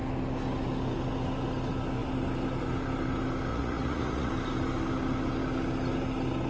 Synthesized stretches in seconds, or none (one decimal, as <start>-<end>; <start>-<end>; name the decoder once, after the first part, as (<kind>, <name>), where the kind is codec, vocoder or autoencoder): 3.5-4.3 (vocoder, Vocos)